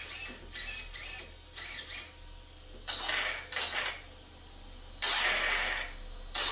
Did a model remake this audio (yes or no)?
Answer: no